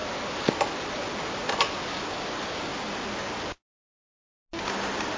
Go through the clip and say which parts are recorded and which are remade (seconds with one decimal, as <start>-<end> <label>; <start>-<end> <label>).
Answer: 0.0-5.2 recorded